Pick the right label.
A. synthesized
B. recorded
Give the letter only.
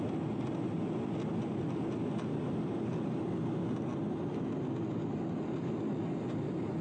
B